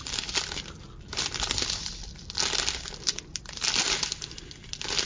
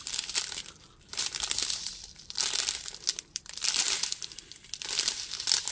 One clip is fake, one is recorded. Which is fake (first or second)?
second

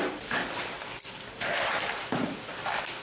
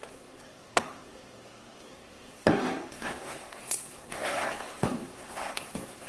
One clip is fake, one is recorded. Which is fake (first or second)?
second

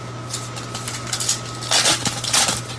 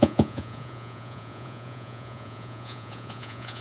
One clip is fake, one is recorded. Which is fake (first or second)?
second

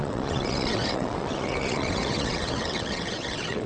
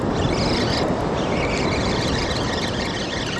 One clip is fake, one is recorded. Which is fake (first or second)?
first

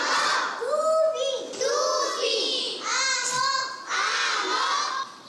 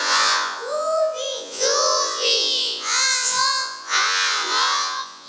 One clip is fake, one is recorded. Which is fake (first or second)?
second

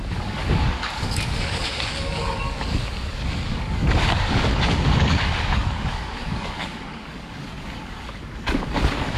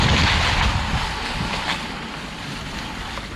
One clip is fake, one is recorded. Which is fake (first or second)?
first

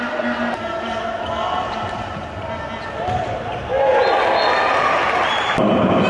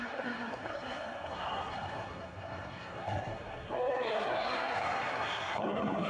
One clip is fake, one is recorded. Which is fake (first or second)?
second